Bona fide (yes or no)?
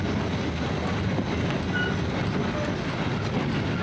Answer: yes